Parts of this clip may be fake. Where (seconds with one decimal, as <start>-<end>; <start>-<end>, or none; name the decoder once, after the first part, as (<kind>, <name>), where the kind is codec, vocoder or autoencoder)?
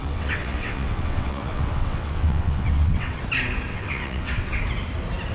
0.0-3.2 (vocoder, WaveNeXt); 3.7-4.6